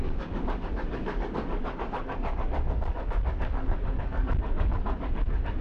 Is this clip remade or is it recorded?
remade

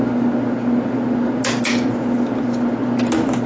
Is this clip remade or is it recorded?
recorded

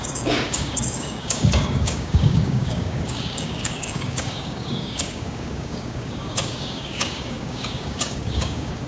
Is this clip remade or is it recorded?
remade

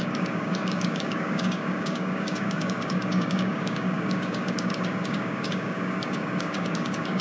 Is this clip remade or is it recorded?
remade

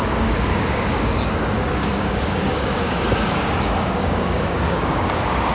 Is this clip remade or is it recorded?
remade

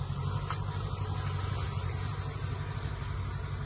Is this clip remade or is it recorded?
recorded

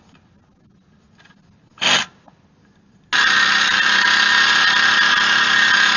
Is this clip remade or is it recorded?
recorded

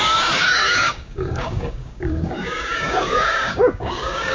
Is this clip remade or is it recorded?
remade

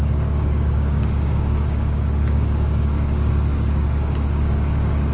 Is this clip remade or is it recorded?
remade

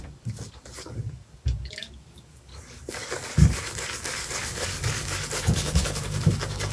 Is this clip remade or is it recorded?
remade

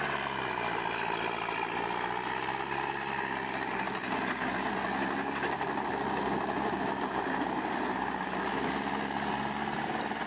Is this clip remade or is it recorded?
recorded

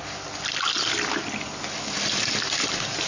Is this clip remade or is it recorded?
recorded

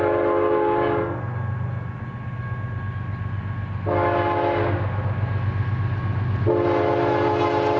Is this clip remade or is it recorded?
recorded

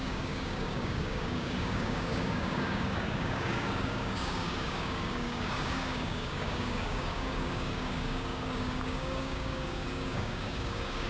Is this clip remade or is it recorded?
remade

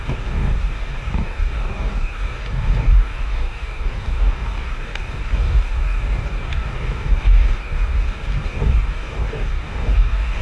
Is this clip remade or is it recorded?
remade